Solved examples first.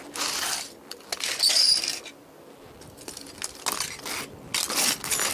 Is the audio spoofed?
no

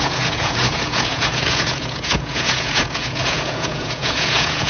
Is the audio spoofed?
yes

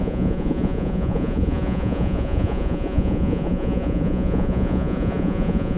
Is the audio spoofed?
yes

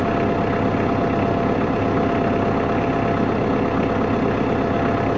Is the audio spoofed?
no